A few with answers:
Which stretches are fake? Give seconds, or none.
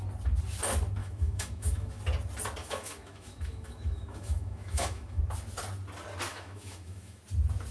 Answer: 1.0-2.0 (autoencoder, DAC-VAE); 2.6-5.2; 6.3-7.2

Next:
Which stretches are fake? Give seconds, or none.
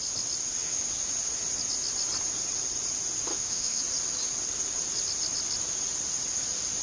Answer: 3.3-3.8 (autoencoder, DAC-VAE)